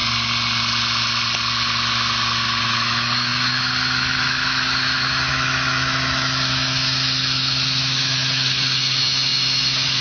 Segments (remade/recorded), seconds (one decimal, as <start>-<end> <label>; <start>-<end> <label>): 0.0-2.6 recorded; 2.6-10.0 remade